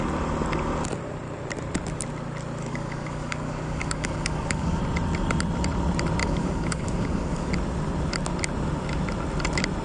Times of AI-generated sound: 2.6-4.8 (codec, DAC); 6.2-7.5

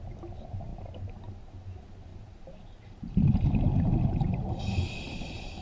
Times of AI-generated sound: none